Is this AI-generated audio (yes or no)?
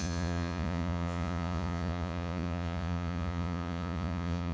yes